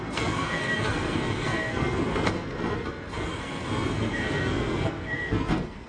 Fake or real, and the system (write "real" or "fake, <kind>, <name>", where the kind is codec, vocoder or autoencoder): fake, codec, SNAC